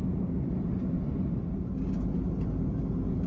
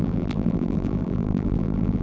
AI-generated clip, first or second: second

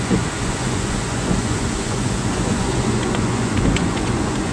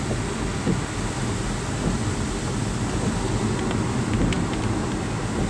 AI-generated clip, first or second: first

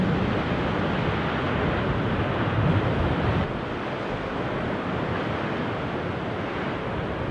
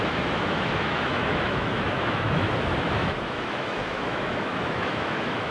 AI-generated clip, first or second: second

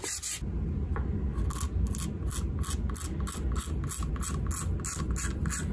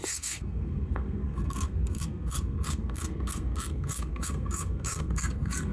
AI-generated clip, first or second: second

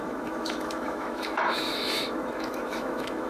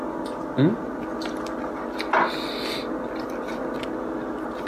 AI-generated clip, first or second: first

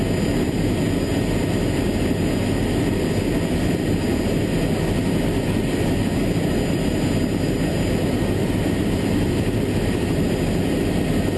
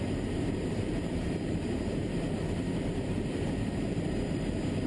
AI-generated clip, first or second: second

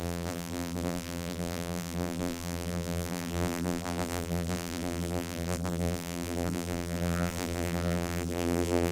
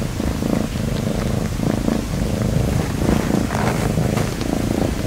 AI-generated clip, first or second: first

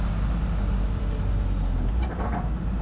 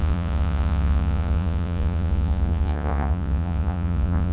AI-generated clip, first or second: second